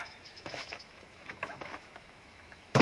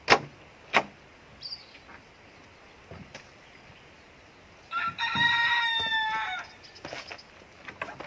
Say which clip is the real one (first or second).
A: second